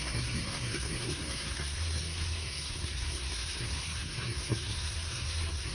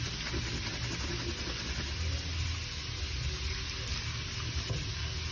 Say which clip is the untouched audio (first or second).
second